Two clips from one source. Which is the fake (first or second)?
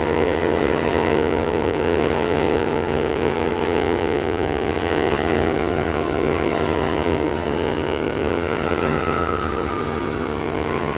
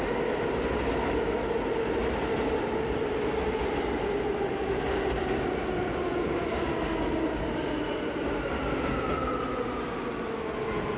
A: first